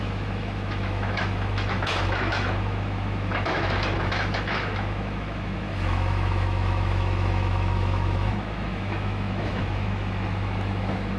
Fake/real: fake